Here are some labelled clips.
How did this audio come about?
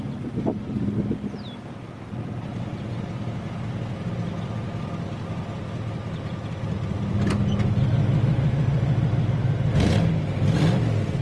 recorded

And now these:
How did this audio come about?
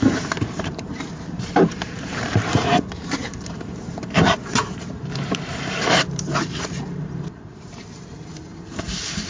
remade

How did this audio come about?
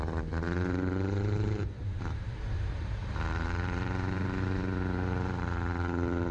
remade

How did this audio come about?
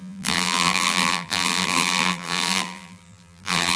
remade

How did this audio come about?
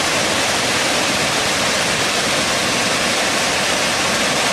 recorded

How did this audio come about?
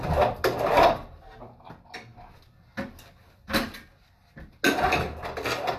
recorded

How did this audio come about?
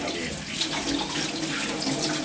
recorded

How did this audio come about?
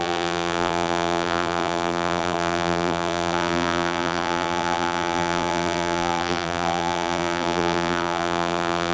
remade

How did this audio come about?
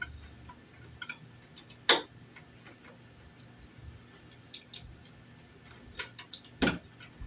recorded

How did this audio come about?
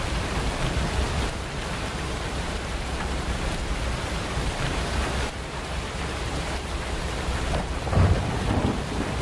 remade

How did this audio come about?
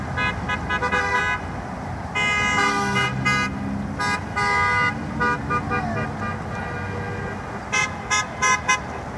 recorded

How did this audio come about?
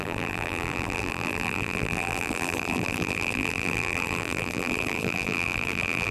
remade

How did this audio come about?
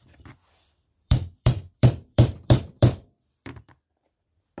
remade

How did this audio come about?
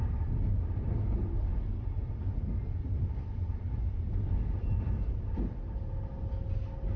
recorded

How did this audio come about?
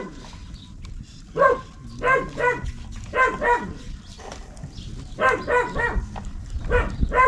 recorded